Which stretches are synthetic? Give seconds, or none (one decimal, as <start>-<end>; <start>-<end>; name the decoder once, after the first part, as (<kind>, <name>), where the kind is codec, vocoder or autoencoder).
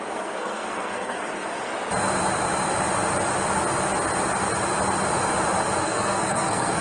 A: 0.0-1.7 (codec, SNAC); 5.8-6.8